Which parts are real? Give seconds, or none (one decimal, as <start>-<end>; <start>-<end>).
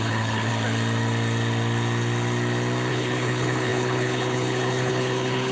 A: 0.5-2.9